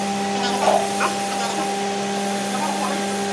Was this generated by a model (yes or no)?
no